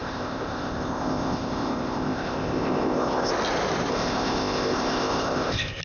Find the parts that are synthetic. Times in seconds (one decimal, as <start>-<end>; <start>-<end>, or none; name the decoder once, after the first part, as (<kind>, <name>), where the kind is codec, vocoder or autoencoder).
0.0-3.3 (codec, ZipCodec); 3.9-5.8